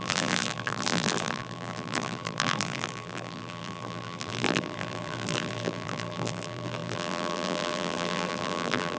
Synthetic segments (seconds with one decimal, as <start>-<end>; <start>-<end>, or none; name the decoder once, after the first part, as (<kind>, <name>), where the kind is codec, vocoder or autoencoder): 0.0-9.0 (vocoder, BigVGAN v2)